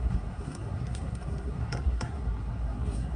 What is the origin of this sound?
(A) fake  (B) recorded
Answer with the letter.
A